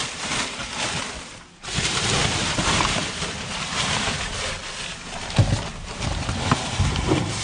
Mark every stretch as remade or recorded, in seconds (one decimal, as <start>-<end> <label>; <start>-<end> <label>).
0.0-0.6 remade; 0.6-1.1 recorded; 1.1-4.6 remade; 4.6-6.5 recorded; 6.5-7.4 remade